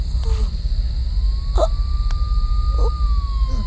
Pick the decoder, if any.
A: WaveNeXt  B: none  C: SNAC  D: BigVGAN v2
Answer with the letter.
B